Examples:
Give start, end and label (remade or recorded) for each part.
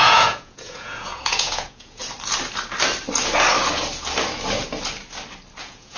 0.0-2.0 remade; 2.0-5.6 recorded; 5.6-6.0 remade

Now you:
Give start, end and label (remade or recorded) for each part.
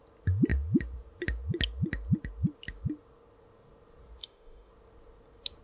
0.0-4.2 recorded; 4.2-4.7 remade; 4.7-5.6 recorded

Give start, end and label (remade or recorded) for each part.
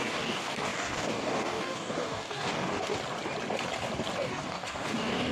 0.0-2.9 remade; 2.9-4.2 recorded; 4.2-5.3 remade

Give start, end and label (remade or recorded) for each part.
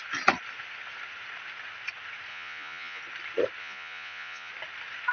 0.0-2.3 recorded; 2.3-3.0 remade; 3.0-3.6 recorded; 3.6-4.5 remade; 4.5-5.1 recorded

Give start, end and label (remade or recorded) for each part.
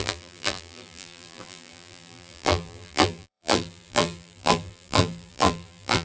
0.0-6.0 remade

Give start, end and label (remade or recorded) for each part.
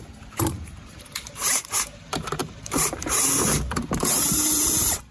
0.0-5.1 remade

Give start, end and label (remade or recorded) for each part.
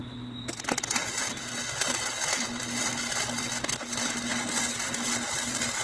0.0-5.8 recorded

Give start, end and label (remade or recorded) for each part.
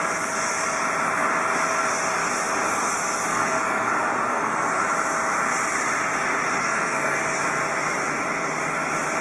0.0-3.3 recorded; 3.3-3.9 remade; 3.9-4.3 recorded; 4.3-4.8 remade; 4.8-6.6 recorded; 6.6-7.2 remade; 7.2-9.2 recorded